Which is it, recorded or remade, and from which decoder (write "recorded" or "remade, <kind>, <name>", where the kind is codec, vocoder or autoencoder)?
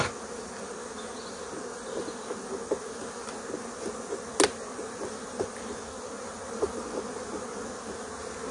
recorded